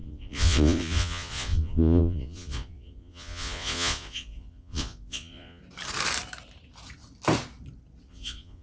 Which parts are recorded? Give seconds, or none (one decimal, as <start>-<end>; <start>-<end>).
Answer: 5.6-8.1